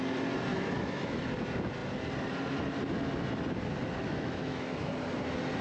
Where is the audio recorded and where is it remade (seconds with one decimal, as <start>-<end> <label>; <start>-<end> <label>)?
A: 0.0-0.5 recorded; 0.5-1.2 remade; 1.2-4.0 recorded; 4.0-4.9 remade; 4.9-5.6 recorded